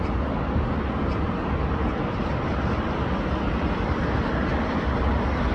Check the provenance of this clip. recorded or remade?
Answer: recorded